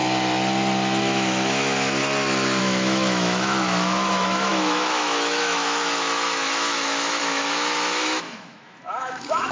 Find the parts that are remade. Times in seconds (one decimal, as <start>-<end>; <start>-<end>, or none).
1.0-2.0; 2.6-9.5